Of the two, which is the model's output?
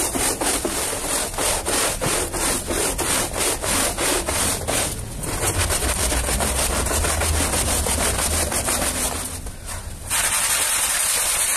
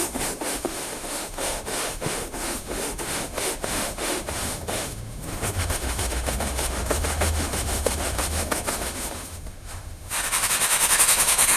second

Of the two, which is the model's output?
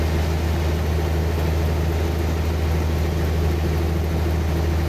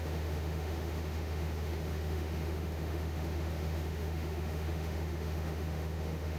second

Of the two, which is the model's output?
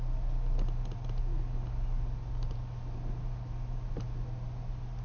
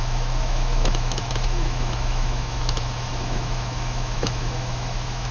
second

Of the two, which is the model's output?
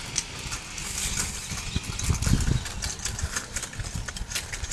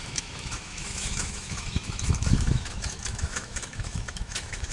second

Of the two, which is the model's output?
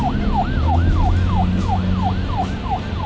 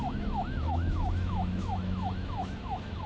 second